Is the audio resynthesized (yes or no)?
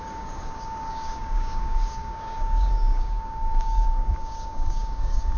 yes